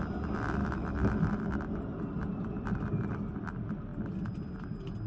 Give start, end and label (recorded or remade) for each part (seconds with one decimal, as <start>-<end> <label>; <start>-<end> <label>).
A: 0.0-0.6 recorded; 0.6-1.2 remade; 1.2-5.1 recorded